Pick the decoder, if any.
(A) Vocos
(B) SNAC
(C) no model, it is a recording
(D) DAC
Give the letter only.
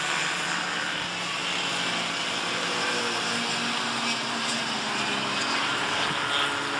C